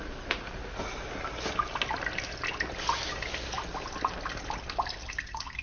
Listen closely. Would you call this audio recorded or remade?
recorded